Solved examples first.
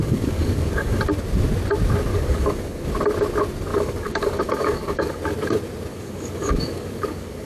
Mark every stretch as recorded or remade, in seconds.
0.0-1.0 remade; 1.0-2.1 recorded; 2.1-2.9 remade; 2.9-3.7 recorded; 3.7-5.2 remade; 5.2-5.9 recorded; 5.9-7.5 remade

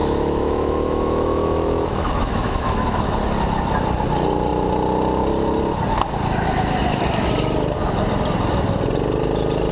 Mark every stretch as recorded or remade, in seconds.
0.0-3.1 remade; 3.1-9.7 recorded

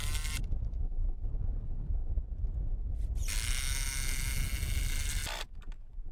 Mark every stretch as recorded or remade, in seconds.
0.0-6.1 recorded

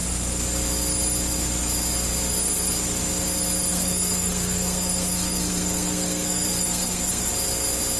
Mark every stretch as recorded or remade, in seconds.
0.0-3.7 recorded; 3.7-7.3 remade; 7.3-8.0 recorded